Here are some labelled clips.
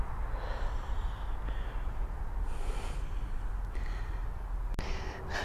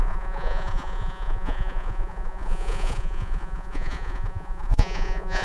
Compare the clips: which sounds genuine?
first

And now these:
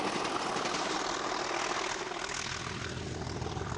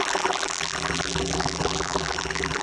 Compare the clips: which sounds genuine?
first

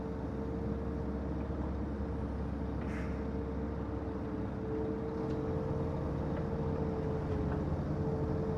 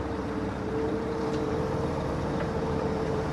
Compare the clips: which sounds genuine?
first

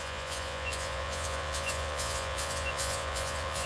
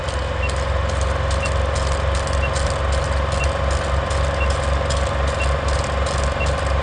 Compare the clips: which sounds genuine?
second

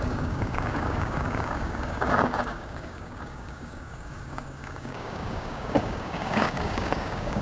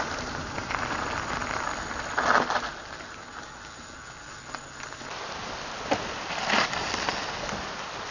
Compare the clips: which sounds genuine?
second